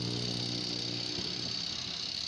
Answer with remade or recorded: recorded